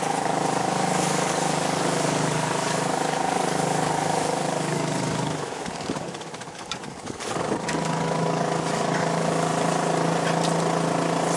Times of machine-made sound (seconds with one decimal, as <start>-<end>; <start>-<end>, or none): 0.0-9.5